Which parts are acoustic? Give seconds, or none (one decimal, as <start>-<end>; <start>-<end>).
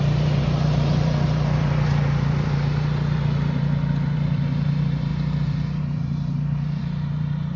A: 5.1-5.8